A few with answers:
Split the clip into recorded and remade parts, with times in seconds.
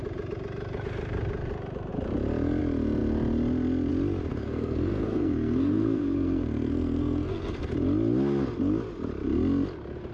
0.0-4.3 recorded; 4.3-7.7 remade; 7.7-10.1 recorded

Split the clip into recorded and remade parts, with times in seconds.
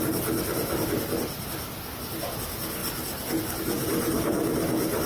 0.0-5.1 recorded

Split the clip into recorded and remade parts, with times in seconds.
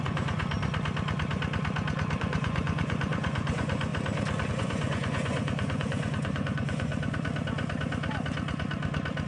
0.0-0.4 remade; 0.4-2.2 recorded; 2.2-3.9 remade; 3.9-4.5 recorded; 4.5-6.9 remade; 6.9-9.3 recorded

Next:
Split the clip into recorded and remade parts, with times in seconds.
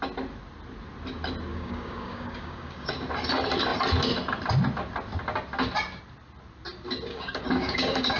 0.0-1.5 recorded; 1.5-2.9 remade; 2.9-7.1 recorded; 7.1-8.2 remade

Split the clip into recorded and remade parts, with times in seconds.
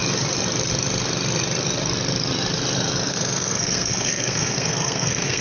0.0-3.1 recorded; 3.1-5.4 remade